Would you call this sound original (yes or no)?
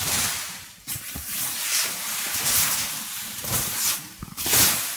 no